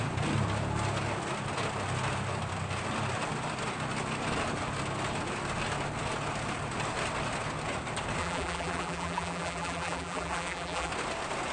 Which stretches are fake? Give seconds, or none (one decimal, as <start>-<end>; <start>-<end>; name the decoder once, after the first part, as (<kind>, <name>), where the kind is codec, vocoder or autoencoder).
8.2-10.9 (vocoder, BigVGAN v2)